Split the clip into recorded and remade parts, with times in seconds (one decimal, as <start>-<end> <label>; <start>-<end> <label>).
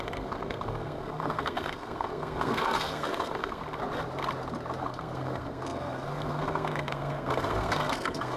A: 0.0-3.6 remade; 3.6-4.8 recorded; 4.8-8.4 remade